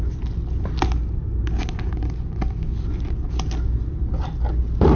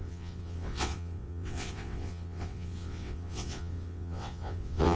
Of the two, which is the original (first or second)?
first